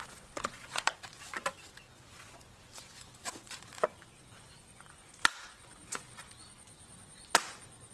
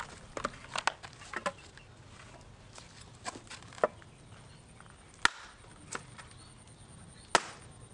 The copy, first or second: first